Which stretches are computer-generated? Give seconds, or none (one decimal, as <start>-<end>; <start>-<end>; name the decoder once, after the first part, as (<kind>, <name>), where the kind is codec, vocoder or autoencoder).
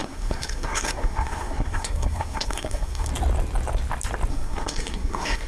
0.0-3.1 (codec, SNAC); 4.3-5.5